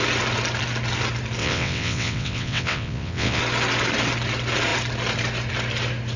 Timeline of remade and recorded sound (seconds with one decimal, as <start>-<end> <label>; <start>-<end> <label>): 0.0-1.4 recorded; 1.4-3.4 remade; 3.4-6.2 recorded